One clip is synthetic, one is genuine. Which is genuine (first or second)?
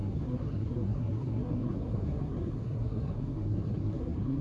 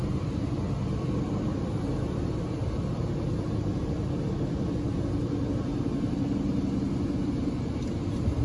second